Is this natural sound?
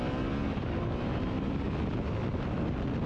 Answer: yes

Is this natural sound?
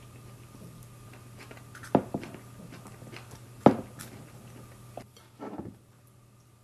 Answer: yes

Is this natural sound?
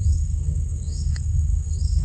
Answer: no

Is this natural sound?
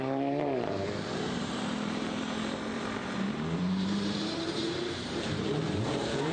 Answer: no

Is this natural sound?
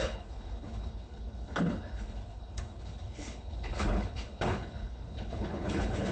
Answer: no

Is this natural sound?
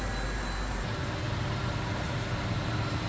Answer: yes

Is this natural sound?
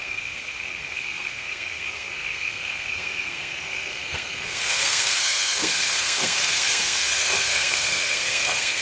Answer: no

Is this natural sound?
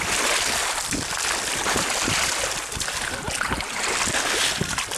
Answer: yes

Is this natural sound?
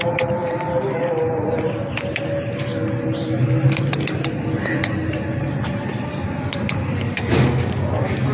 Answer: yes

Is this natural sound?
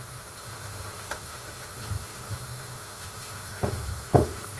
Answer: no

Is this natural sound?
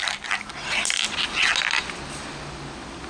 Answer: yes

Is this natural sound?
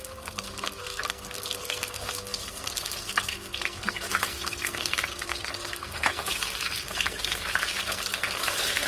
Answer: no